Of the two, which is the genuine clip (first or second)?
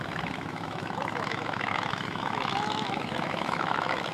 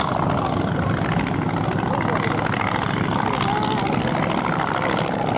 second